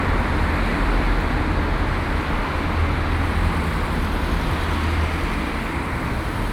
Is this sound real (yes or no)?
yes